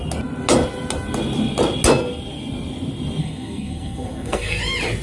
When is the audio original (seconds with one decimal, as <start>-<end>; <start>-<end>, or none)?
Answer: 0.0-3.2; 4.6-5.0